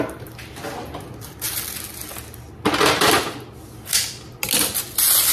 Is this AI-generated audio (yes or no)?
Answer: no